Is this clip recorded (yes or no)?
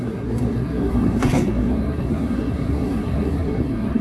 no